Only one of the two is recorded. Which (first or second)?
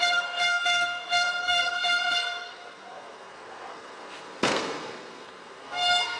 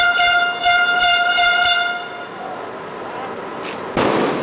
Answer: second